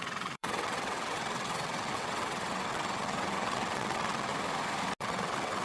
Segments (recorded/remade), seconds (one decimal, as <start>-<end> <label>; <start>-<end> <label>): 0.0-4.3 remade; 4.3-5.0 recorded; 5.0-5.6 remade